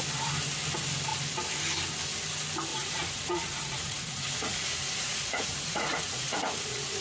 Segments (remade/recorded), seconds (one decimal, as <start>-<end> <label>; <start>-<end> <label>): 0.0-2.7 recorded; 2.7-7.0 remade